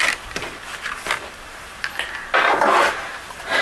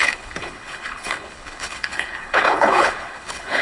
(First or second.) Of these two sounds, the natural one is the first